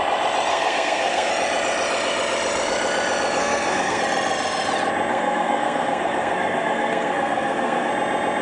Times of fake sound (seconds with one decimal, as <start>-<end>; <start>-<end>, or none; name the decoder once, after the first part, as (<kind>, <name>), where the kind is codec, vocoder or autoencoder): 0.5-1.3 (codec, SNAC); 3.4-4.0; 5.1-7.9